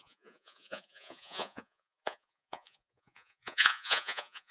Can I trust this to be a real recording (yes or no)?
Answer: no